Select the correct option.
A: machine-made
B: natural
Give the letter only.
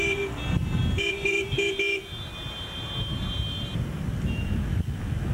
B